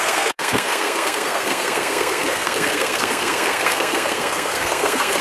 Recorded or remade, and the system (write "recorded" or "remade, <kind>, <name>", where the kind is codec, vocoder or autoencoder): remade, codec, SNAC